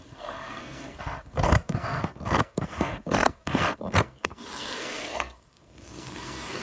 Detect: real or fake fake